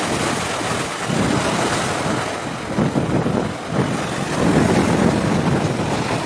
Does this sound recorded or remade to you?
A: recorded